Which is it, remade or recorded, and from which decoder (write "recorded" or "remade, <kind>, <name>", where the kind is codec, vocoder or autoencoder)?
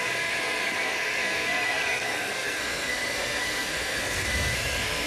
remade, codec, SNAC